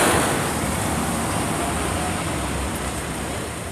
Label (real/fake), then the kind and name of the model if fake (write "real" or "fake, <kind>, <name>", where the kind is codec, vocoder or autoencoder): real